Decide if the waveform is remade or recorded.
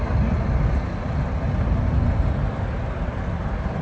recorded